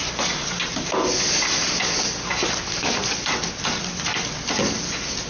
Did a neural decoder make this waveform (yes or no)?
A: no